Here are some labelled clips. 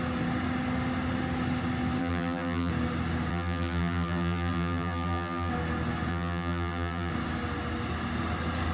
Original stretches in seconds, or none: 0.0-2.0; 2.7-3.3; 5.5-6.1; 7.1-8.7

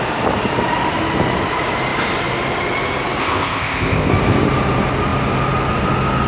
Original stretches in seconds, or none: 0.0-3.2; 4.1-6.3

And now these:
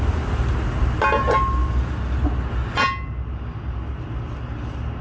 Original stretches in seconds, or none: 0.0-5.0

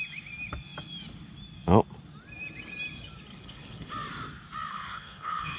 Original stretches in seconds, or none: 0.0-3.3; 3.9-4.7

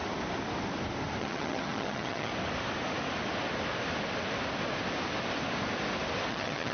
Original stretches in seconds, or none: 0.0-1.2; 2.3-6.3

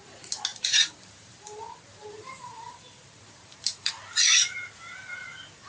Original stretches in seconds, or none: 0.0-0.5; 3.9-5.7